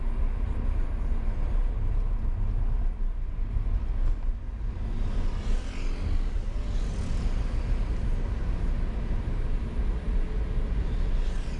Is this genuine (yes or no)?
yes